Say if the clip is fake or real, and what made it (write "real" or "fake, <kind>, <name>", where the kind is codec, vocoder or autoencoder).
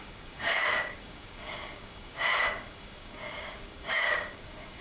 fake, codec, DAC